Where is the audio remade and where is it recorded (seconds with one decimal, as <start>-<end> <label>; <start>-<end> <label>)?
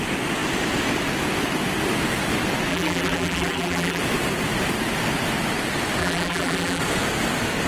0.0-2.7 recorded; 2.7-4.0 remade; 4.0-6.0 recorded; 6.0-6.8 remade; 6.8-7.7 recorded